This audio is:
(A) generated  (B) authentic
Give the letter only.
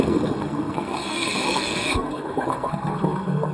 A